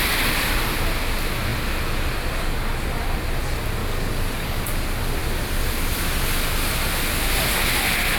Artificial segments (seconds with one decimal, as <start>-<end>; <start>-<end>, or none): 3.8-4.6